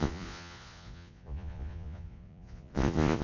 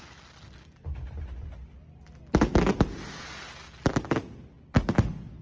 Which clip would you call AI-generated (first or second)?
first